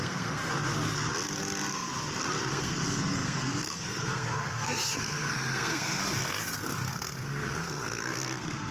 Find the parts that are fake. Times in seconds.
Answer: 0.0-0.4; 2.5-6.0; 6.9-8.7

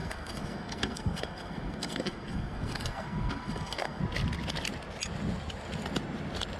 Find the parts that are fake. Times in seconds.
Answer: 0.0-4.0

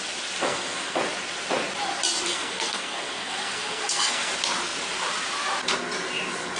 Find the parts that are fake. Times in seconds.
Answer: 0.4-1.0; 2.3-4.3

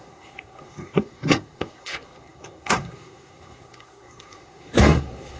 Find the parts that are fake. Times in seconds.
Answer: 0.0-5.4

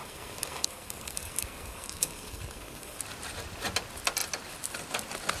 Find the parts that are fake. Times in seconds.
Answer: 0.0-3.0

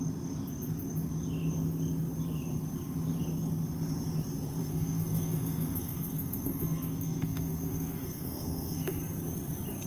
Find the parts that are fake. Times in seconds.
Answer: 4.6-9.0

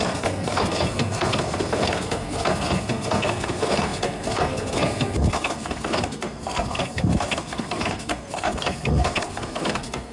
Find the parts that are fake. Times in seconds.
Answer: 0.0-10.1

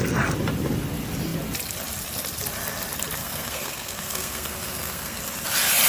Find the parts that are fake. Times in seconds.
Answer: 3.2-5.2